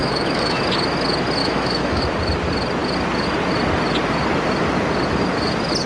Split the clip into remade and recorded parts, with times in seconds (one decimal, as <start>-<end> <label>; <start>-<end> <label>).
0.0-0.6 remade; 0.6-1.4 recorded; 1.4-2.0 remade; 2.0-5.9 recorded